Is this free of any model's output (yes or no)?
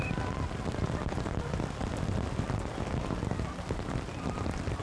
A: yes